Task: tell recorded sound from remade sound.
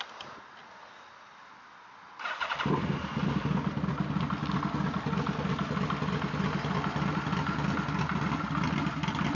recorded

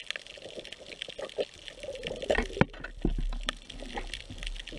recorded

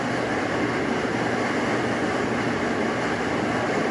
recorded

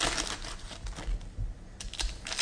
recorded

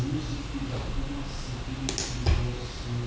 recorded